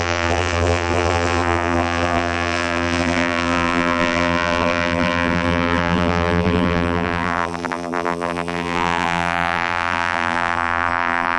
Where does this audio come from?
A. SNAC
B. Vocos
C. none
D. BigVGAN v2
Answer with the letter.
D